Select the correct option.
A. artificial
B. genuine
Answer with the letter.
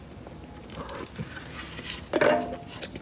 B